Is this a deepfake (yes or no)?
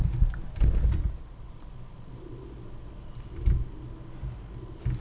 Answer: no